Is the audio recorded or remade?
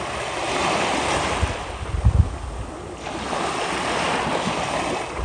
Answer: recorded